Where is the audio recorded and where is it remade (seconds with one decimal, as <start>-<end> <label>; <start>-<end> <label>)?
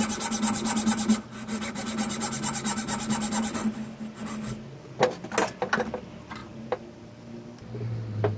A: 0.0-8.4 recorded